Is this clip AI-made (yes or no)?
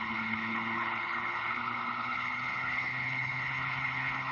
yes